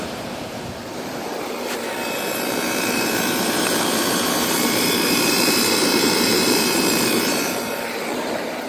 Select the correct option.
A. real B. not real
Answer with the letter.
B